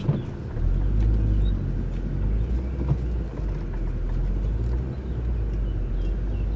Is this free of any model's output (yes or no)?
yes